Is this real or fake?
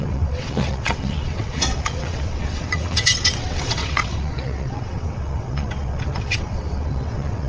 fake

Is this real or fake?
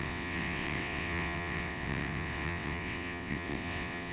fake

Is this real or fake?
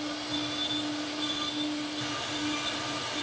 real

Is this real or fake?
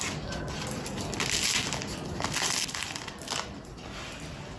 real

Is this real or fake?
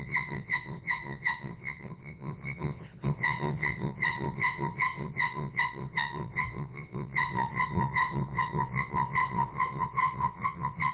fake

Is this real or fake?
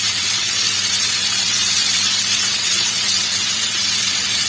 fake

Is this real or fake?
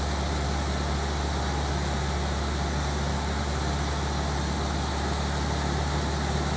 real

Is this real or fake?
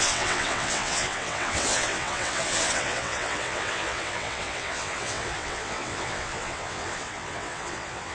fake